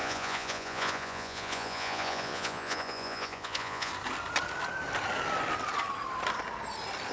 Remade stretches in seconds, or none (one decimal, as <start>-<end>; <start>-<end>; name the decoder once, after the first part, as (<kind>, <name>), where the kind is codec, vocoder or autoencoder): 0.0-3.9 (vocoder, Vocos)